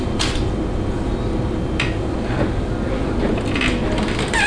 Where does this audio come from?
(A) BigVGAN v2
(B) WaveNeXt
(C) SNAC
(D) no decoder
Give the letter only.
D